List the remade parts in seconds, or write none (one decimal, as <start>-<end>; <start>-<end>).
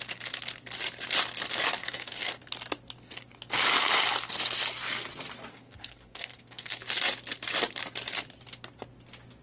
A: 1.8-2.4; 5.5-6.8